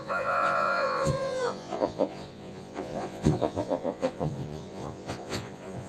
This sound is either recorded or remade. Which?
remade